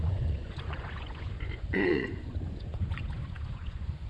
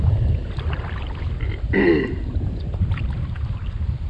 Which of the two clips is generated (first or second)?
first